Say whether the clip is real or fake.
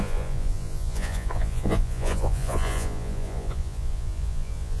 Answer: fake